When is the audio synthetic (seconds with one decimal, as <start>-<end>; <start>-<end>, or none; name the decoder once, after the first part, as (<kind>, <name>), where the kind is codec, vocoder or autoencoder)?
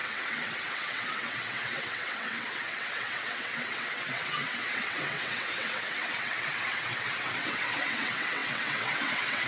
0.0-9.5 (vocoder, WaveNeXt)